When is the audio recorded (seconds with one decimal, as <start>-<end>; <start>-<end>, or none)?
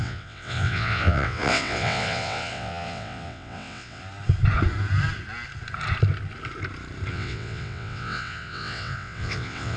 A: 4.0-7.1